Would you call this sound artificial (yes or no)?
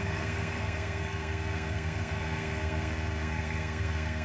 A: yes